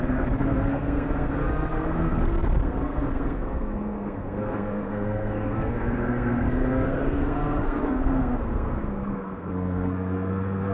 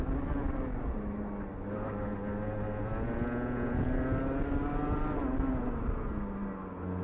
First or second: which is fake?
first